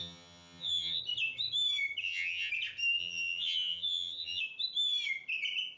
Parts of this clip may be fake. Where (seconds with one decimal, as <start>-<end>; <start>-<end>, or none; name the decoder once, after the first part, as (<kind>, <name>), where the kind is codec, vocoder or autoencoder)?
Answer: 0.0-1.0 (vocoder, HiFi-GAN); 2.0-2.5; 3.0-4.4